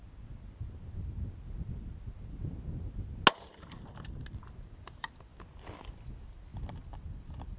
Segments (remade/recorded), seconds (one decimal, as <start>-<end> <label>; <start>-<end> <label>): 0.0-4.6 recorded; 4.6-5.3 remade; 5.3-5.9 recorded; 5.9-7.6 remade